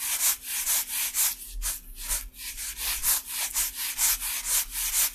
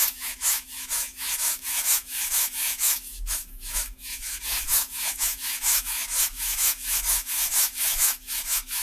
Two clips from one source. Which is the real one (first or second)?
first